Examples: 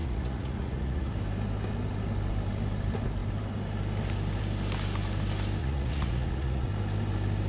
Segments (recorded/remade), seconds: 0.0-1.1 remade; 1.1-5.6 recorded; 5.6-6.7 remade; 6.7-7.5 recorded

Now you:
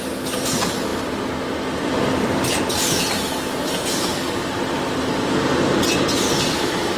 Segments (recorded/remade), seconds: 0.0-7.0 recorded

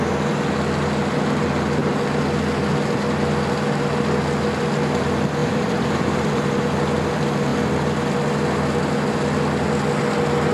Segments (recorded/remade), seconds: 0.0-5.4 recorded; 5.4-6.6 remade; 6.6-10.5 recorded